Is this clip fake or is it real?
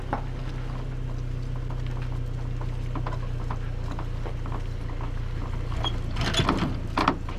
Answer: real